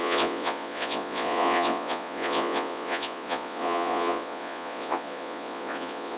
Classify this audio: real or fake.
fake